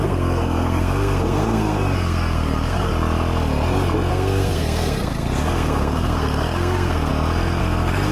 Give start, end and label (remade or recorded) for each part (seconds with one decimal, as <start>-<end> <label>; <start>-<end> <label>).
0.0-2.9 remade; 2.9-4.1 recorded; 4.1-7.1 remade; 7.1-7.6 recorded; 7.6-8.1 remade